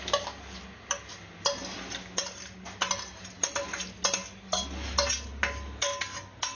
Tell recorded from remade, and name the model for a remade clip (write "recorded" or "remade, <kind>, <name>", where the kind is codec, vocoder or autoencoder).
recorded